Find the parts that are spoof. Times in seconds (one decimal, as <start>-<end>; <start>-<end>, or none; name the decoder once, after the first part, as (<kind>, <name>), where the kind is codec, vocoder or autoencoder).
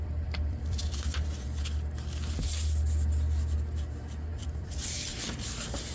0.0-0.8 (vocoder, BigVGAN v2); 4.3-5.9